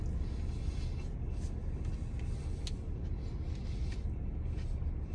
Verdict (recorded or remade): recorded